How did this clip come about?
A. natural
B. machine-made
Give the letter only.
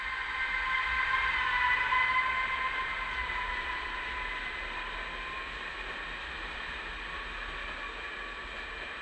A